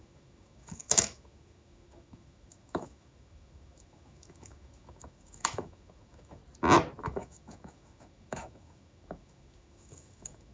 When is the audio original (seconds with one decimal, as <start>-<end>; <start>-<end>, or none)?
6.4-7.0